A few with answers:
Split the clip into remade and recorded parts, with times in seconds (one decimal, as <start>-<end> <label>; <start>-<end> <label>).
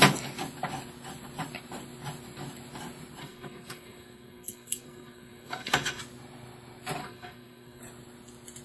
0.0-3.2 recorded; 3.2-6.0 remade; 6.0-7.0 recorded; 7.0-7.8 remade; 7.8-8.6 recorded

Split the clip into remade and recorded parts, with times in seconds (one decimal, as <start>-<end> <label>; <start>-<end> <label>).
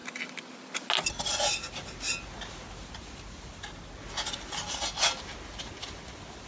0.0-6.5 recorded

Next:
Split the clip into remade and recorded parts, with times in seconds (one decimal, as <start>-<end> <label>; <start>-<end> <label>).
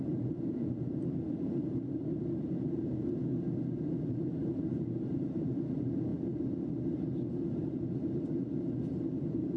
0.0-3.3 remade; 3.3-4.1 recorded; 4.1-6.1 remade; 6.1-7.4 recorded; 7.4-9.6 remade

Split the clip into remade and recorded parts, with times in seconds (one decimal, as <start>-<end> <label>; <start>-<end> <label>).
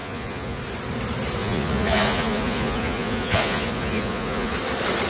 0.0-0.6 remade; 0.6-1.4 recorded; 1.4-4.5 remade; 4.5-5.1 recorded